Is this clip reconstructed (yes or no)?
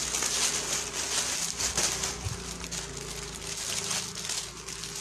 no